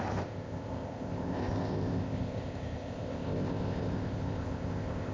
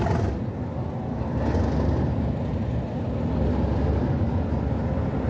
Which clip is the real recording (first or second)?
second